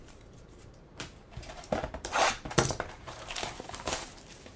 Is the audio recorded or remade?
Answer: remade